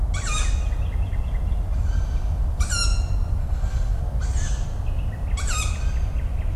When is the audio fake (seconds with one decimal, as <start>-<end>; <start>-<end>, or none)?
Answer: 3.4-4.0